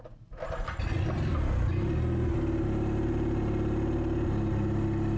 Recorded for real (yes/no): yes